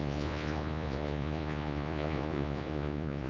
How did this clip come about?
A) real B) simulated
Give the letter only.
B